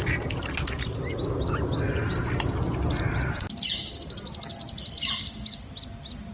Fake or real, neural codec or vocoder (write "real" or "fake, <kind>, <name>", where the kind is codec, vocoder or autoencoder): real